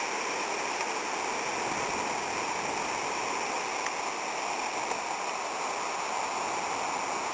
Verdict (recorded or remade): recorded